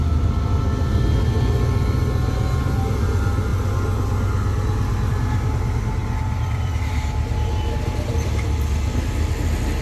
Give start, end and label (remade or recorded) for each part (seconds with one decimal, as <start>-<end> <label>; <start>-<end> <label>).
0.0-9.8 recorded